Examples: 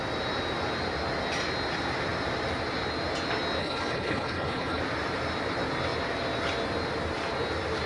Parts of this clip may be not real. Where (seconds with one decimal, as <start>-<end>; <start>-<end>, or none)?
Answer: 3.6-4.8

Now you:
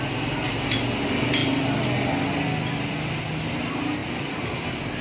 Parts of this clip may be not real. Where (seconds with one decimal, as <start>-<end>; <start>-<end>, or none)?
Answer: none

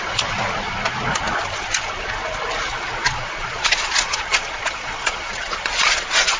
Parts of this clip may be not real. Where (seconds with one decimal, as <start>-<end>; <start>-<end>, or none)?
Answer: 2.7-6.4

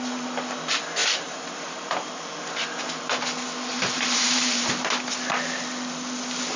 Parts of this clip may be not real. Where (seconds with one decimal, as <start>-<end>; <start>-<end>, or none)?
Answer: 1.0-3.2; 3.7-4.7

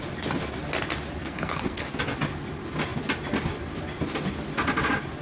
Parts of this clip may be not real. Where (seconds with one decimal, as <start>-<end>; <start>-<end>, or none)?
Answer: 1.2-2.0

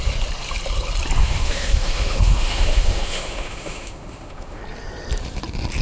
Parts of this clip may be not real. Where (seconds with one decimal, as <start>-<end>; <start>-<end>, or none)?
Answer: 1.2-4.6

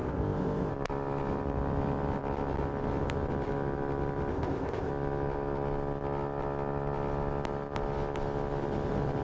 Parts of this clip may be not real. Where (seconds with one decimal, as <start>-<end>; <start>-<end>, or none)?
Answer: 0.0-0.7; 4.3-4.9